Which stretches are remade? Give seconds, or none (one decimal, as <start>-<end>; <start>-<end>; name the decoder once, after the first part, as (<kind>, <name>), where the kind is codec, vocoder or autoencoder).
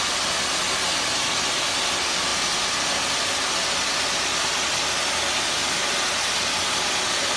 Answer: none